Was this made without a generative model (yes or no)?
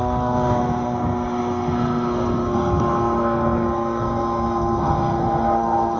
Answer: no